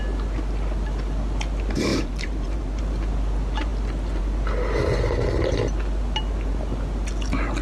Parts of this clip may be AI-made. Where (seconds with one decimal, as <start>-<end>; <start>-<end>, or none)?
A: 1.9-2.8